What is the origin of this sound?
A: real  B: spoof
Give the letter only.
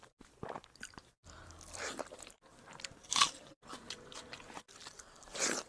A